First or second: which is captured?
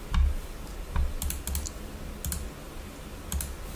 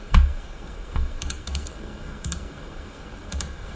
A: first